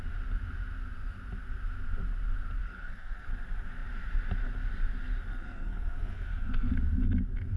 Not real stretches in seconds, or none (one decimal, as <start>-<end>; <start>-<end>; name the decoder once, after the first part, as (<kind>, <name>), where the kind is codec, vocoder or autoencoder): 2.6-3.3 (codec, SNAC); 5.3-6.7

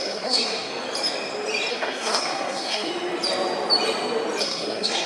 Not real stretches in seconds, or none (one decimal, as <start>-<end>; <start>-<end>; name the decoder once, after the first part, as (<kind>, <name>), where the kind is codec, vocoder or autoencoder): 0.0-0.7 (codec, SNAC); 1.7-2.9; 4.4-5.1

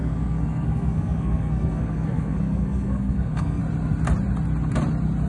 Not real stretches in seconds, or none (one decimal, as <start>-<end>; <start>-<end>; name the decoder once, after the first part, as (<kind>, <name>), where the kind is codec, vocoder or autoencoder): 0.0-3.6 (codec, SNAC)

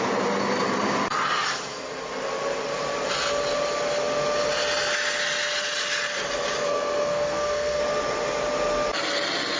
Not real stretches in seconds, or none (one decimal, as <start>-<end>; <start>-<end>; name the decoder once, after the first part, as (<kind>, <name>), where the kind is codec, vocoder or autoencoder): 6.6-7.8 (codec, SNAC)

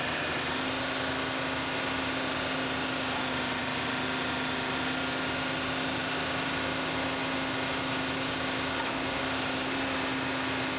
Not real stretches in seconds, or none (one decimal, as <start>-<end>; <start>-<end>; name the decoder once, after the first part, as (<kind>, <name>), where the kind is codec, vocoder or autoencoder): none

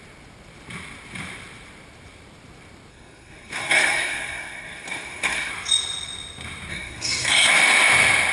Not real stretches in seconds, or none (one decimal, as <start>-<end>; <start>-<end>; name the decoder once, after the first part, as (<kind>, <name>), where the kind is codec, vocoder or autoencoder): 2.9-5.5 (codec, SNAC); 6.7-7.5